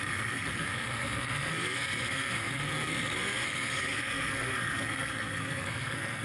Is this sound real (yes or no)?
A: no